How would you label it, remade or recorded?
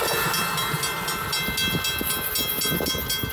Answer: recorded